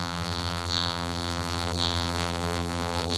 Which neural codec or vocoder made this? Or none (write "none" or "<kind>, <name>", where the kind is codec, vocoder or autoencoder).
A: vocoder, BigVGAN v2